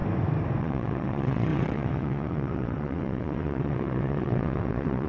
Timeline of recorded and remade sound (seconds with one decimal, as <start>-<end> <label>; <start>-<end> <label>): 0.0-0.6 recorded; 0.6-5.1 remade